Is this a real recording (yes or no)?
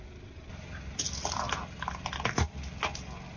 yes